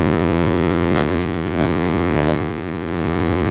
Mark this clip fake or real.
fake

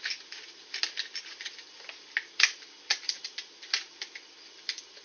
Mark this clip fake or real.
real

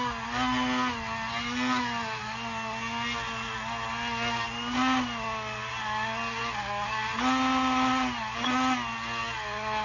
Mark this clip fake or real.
real